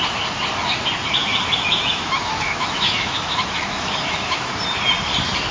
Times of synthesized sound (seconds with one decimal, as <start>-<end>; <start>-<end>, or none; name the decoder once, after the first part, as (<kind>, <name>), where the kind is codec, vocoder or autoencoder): 1.2-4.5 (autoencoder, DAC-VAE)